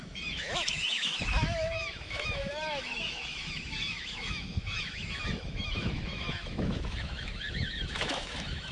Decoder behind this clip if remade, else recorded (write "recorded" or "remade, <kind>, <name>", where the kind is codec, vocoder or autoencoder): remade, autoencoder, DAC-VAE